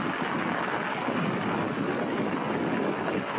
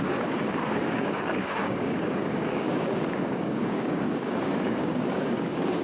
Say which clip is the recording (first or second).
first